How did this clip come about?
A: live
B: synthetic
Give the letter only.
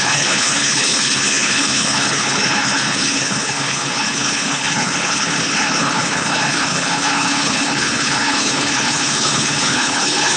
B